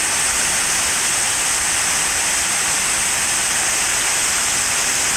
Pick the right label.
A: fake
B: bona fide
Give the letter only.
B